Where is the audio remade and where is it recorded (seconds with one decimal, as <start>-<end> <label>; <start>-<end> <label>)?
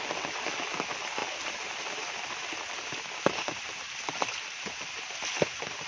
0.0-5.9 recorded